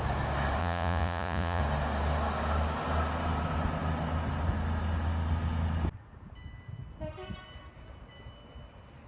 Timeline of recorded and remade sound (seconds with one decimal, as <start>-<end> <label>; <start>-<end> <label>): 0.0-0.6 recorded; 0.6-1.6 remade; 1.6-9.1 recorded